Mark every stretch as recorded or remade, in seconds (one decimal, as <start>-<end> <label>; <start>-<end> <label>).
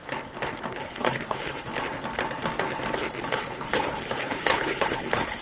0.0-0.7 recorded; 0.7-1.7 remade; 1.7-3.3 recorded; 3.3-5.4 remade